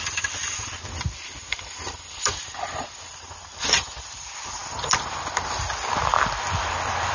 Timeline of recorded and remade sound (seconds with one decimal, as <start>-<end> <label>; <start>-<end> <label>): 0.0-7.1 recorded